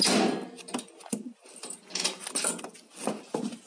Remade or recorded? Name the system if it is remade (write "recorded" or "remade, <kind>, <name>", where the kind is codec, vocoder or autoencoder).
recorded